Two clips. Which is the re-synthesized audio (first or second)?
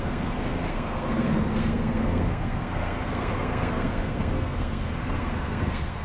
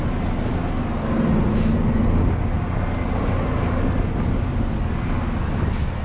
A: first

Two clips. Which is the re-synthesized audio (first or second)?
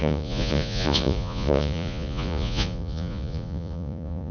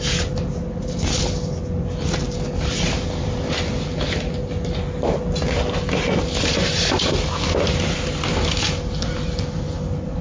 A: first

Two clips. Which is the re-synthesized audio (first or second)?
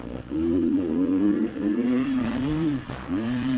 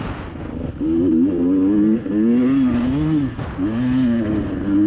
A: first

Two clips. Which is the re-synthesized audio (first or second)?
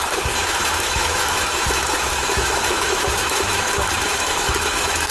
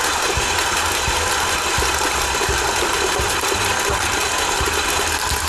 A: first